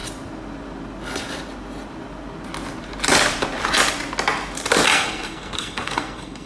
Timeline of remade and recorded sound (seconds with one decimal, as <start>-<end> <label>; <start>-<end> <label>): 0.0-4.9 recorded; 4.9-6.5 remade